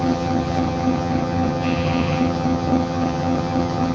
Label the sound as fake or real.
fake